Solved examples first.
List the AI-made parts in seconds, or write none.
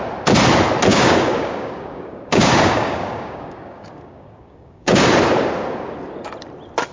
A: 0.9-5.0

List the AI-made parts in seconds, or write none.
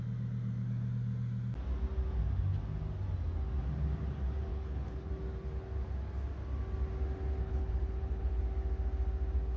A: 4.5-5.1; 7.4-8.4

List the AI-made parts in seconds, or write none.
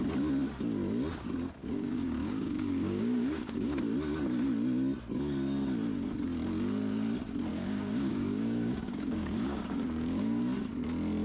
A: 1.6-3.8; 7.5-10.4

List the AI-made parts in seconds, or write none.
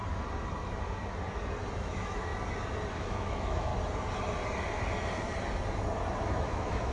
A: 1.8-2.3; 2.9-3.7; 6.4-6.9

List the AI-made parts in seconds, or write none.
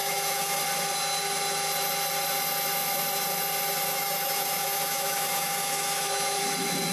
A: 0.0-0.6; 3.9-6.4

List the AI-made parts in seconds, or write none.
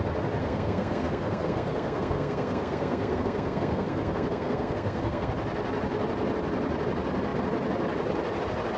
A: 0.4-5.3